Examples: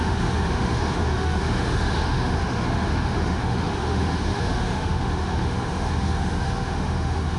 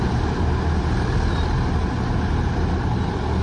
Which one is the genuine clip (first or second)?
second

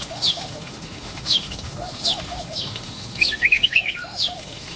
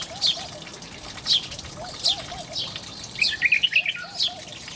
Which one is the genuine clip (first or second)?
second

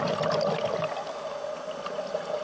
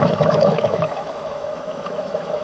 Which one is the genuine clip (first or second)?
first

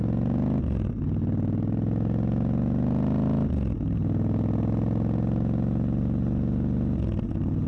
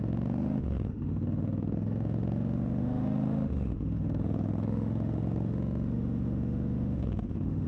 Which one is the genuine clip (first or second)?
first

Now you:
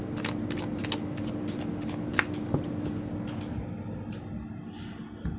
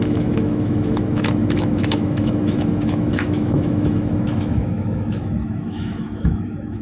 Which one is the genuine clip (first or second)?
first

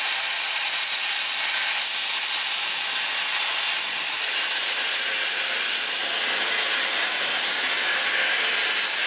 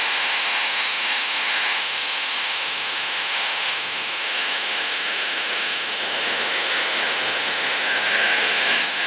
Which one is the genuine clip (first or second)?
first